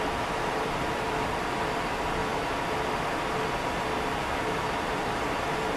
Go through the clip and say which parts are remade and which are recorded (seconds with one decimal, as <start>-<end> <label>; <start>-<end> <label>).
0.0-2.2 remade; 2.2-4.0 recorded; 4.0-5.8 remade